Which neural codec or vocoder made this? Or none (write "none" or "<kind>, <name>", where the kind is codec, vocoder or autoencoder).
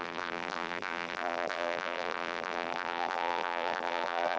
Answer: vocoder, BigVGAN v2